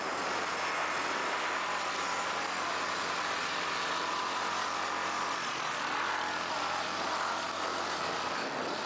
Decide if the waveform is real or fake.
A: real